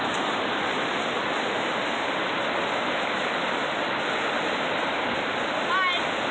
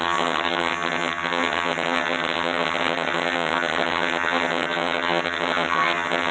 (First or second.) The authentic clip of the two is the first